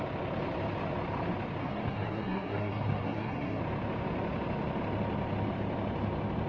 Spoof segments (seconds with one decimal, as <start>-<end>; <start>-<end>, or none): 1.6-3.6